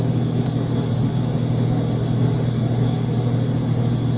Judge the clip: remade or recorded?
recorded